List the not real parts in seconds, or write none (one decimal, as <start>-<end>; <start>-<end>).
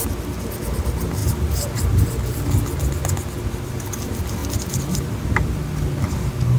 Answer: none